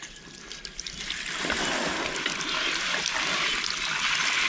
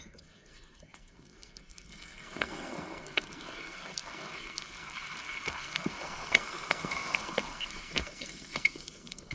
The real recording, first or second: first